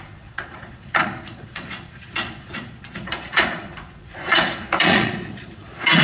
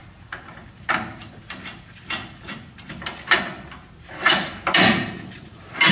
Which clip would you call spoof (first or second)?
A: first